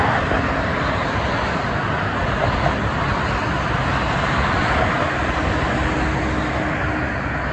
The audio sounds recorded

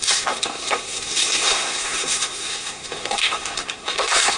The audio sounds remade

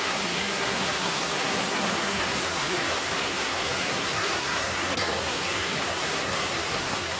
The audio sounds remade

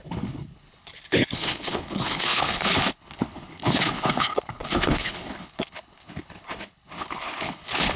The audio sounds remade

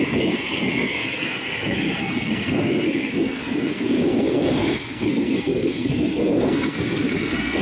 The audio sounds remade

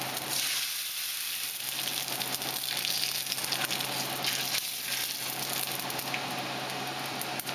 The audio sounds recorded